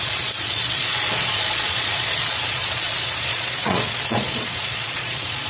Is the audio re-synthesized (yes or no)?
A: yes